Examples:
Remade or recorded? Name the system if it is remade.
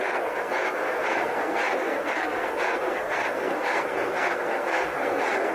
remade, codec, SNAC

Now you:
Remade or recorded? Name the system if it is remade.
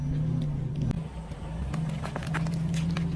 recorded